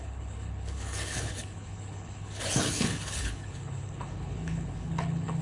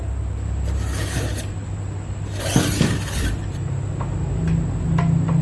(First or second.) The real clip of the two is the second